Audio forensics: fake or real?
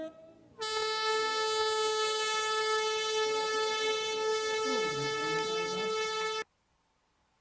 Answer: real